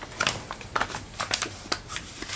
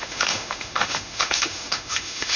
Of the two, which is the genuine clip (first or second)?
first